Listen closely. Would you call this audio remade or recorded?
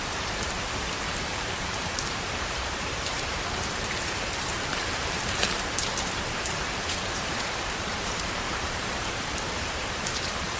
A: remade